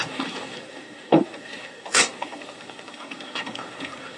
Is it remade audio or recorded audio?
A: remade